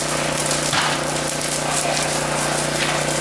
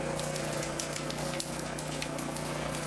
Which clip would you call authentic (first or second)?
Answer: first